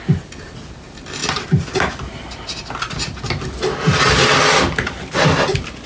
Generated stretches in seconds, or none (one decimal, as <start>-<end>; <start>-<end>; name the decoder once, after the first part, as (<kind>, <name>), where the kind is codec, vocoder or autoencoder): none